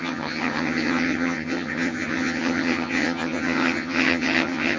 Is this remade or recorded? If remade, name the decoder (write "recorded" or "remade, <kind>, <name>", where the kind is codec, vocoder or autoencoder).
remade, vocoder, HiFi-GAN